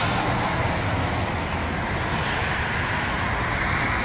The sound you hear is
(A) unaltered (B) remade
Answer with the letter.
A